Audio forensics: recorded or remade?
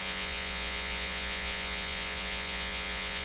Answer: remade